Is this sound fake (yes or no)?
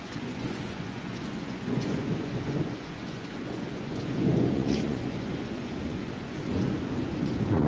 yes